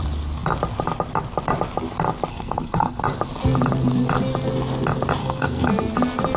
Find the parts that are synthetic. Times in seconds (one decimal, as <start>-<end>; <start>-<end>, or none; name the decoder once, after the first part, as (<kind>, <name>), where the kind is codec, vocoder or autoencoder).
2.3-3.0 (codec, SNAC); 5.2-5.7